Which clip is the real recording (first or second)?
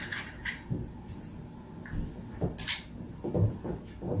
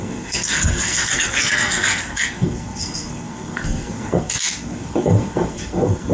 first